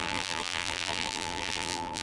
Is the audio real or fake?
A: fake